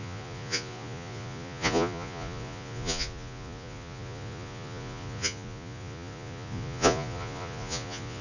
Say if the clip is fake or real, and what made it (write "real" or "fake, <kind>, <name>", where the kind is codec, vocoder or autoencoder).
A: fake, vocoder, Vocos